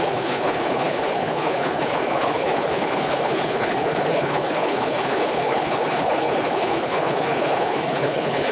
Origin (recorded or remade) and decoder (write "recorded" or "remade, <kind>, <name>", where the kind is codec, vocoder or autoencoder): remade, codec, HILCodec